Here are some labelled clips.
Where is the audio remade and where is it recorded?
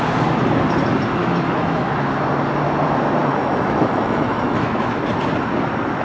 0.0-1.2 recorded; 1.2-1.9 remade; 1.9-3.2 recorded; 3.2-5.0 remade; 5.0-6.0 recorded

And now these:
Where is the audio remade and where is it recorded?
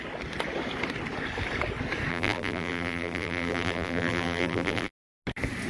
0.0-2.1 recorded; 2.1-4.9 remade; 4.9-5.7 recorded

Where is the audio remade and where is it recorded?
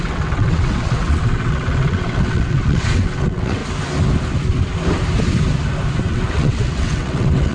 0.0-3.6 remade; 3.6-6.0 recorded; 6.0-7.5 remade